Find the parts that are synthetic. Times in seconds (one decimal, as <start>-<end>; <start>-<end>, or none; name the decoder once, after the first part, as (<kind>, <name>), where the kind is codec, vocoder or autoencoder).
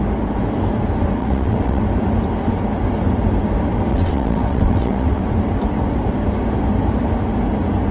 1.2-1.8 (vocoder, WaveNeXt); 3.9-5.2